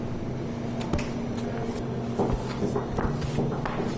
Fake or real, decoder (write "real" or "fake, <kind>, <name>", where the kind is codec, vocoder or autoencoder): real